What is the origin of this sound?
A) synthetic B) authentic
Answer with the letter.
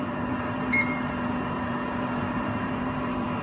A